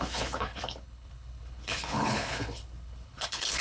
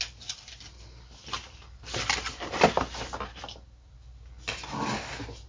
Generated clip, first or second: first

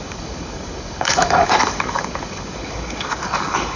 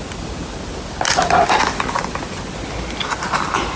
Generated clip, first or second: first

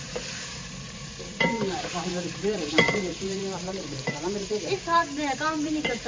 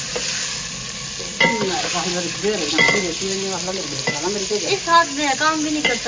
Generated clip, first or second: first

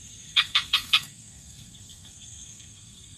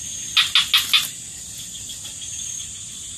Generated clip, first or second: first